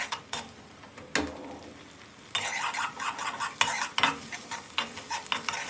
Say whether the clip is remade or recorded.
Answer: recorded